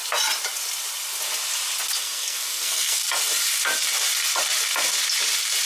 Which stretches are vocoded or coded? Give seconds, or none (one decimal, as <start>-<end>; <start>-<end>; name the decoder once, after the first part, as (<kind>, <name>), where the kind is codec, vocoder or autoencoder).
2.0-3.0 (codec, SNAC)